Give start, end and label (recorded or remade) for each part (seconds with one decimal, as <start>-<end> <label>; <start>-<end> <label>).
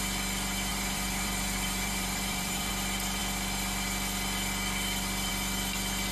0.0-0.7 recorded; 0.7-2.7 remade; 2.7-6.1 recorded